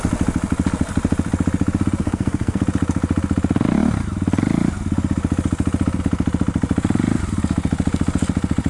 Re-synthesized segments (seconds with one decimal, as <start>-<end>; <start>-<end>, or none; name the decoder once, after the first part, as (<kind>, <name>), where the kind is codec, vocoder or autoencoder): 2.0-2.6 (codec, SNAC)